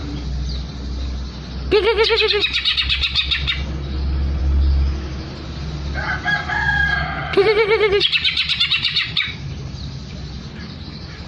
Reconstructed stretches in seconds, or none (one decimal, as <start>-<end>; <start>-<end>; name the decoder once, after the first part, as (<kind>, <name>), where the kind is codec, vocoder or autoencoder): 7.2-9.6 (vocoder, BigVGAN v2)